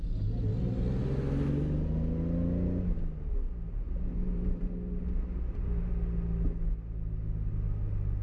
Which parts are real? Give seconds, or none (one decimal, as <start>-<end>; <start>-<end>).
0.0-8.2